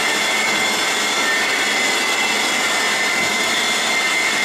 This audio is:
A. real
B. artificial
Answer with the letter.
A